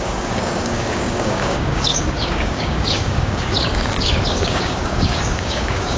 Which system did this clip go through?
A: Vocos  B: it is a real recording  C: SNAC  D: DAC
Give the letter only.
D